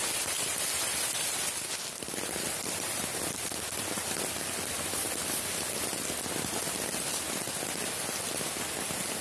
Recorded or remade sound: recorded